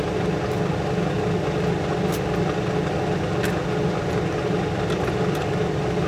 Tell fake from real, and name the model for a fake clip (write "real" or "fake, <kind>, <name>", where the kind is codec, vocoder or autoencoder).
real